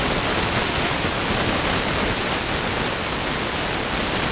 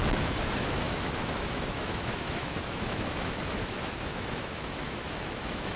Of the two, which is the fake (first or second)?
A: second